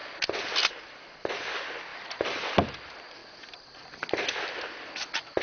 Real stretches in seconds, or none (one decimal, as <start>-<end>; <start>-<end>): 0.0-1.9; 2.5-5.4